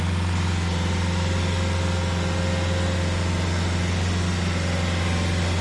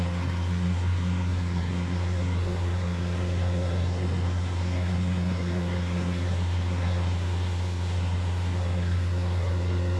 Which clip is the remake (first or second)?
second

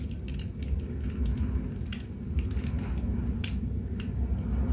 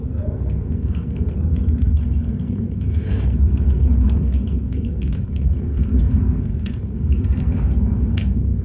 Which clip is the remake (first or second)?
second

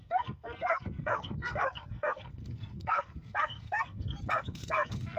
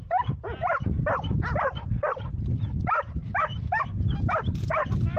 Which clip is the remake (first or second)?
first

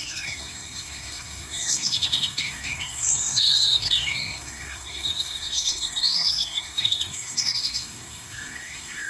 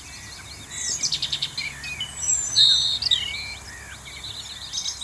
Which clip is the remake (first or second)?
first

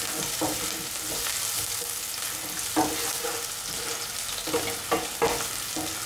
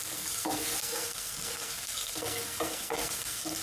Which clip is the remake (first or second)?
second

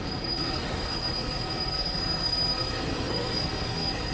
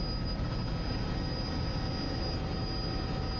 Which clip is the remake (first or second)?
first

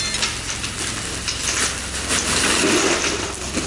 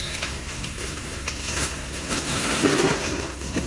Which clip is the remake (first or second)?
second